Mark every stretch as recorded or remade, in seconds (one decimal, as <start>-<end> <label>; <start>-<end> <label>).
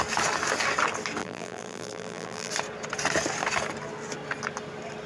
0.0-1.2 recorded; 1.2-2.5 remade; 2.5-5.1 recorded